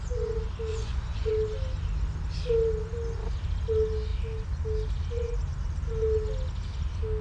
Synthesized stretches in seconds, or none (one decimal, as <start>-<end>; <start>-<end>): 0.7-1.3